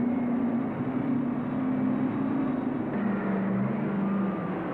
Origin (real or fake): real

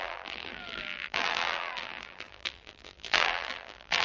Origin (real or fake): fake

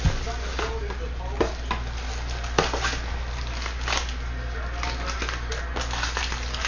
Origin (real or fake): real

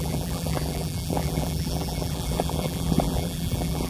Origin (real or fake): fake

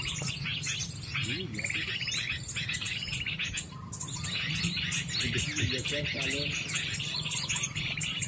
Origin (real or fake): real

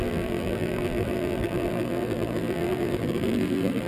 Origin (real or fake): fake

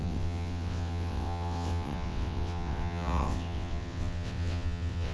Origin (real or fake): fake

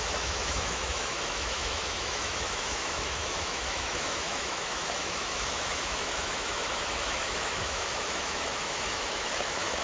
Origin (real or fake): fake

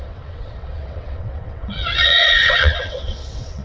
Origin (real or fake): fake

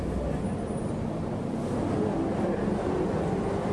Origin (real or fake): real